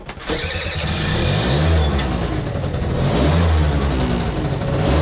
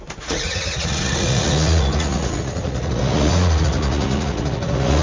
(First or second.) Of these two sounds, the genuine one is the first